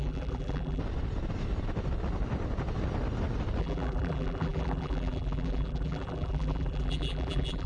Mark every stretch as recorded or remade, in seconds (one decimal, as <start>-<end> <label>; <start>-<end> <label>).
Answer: 0.0-0.8 remade; 0.8-3.6 recorded; 3.6-7.7 remade